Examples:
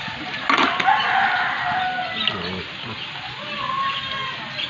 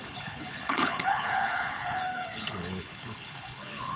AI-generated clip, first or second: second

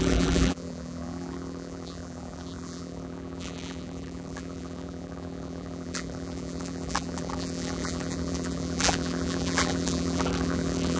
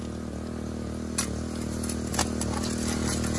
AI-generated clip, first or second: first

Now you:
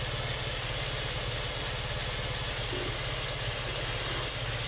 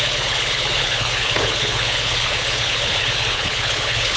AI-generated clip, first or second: second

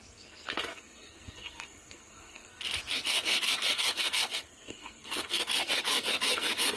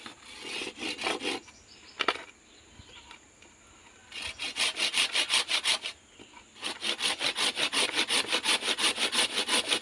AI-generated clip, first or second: first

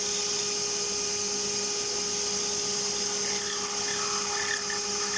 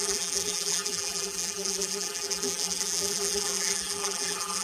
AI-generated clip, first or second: second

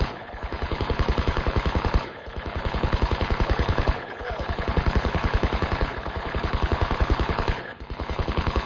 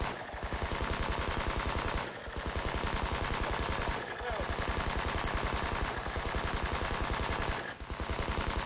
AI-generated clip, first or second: first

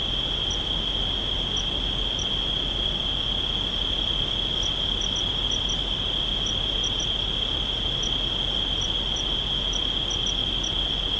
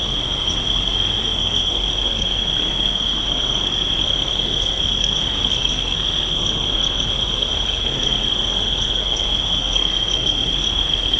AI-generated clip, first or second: second